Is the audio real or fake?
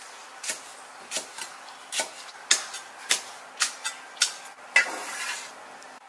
real